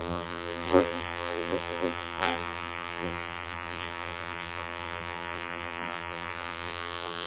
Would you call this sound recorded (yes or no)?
no